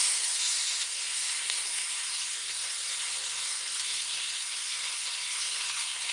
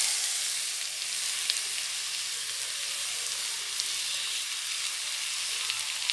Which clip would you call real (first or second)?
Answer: second